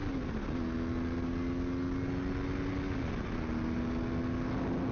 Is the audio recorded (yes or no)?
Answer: yes